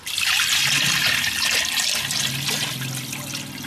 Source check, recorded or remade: recorded